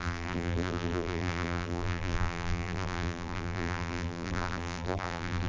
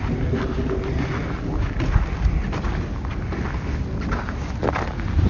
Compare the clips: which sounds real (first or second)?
second